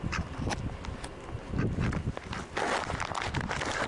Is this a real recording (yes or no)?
yes